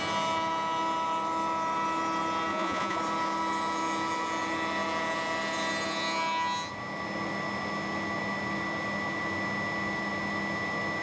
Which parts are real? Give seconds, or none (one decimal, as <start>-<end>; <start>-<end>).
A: 0.0-2.5; 3.0-11.0